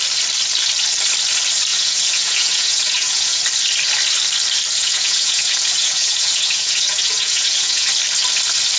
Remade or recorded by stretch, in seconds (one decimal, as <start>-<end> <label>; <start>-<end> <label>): 0.0-1.7 recorded; 1.7-3.4 remade; 3.4-4.8 recorded; 4.8-7.9 remade; 7.9-8.8 recorded